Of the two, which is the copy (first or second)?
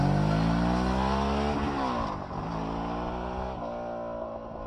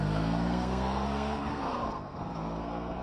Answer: second